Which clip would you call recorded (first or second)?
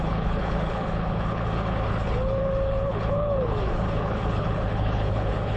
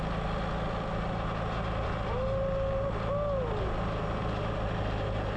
second